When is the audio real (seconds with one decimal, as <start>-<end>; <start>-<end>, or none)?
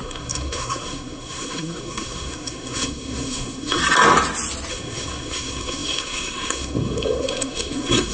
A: 3.8-4.7